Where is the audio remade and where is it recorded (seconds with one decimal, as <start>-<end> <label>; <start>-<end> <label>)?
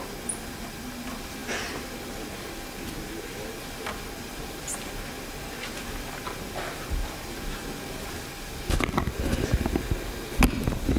0.0-11.0 recorded